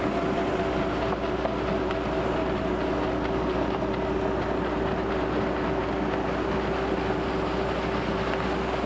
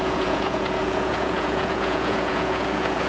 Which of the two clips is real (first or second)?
first